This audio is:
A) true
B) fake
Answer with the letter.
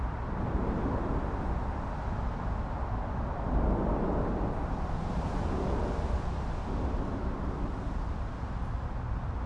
A